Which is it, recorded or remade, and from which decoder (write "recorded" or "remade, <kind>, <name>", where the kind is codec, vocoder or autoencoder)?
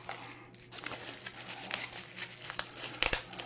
recorded